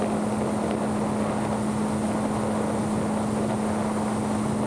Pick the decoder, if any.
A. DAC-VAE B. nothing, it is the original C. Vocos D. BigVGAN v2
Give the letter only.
B